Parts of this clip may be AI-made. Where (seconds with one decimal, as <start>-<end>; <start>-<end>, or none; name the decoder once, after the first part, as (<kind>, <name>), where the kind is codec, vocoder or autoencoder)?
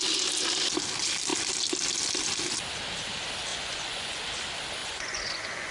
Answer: 3.5-4.2 (vocoder, Vocos); 4.8-5.7